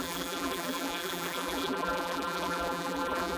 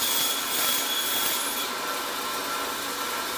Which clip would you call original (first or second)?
second